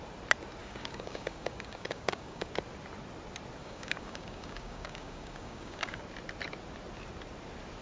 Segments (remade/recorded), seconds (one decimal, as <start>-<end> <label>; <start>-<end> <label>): 0.0-0.6 recorded; 0.6-2.5 remade; 2.5-3.6 recorded; 3.6-6.0 remade; 6.0-7.8 recorded